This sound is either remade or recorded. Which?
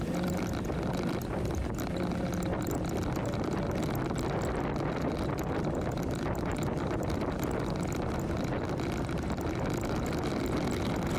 recorded